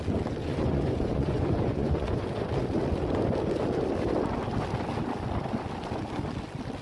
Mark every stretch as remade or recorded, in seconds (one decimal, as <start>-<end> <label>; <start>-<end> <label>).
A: 0.0-0.4 recorded; 0.4-2.3 remade; 2.3-6.8 recorded